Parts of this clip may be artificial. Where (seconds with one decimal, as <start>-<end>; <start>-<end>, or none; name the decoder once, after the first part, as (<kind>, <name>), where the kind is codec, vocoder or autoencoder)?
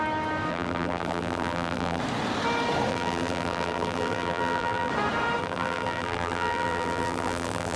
0.5-2.0 (vocoder, BigVGAN v2); 2.9-4.9; 5.4-7.8